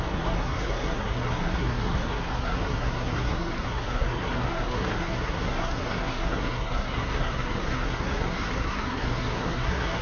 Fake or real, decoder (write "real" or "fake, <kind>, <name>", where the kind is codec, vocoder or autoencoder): fake, codec, SNAC